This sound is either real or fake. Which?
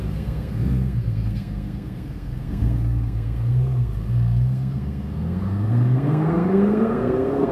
fake